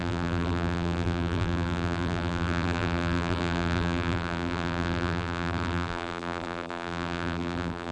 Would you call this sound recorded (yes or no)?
no